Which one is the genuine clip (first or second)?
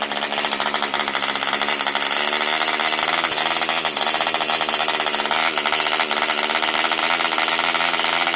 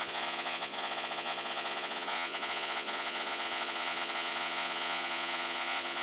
first